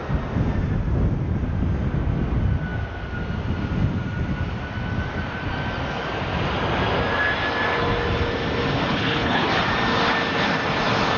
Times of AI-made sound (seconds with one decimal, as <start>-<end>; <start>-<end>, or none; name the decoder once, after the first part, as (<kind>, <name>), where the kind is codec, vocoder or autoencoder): 8.9-9.5 (codec, HILCodec)